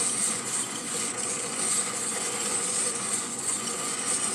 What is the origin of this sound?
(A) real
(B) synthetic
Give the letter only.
B